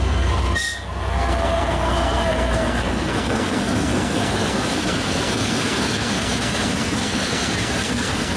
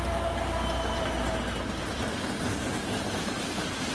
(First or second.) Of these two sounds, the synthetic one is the first